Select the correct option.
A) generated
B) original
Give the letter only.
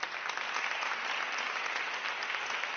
B